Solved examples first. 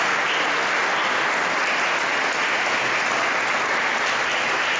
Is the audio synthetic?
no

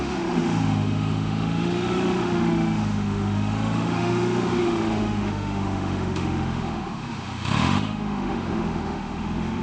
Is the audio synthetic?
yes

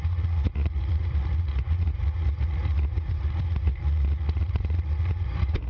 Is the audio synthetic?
yes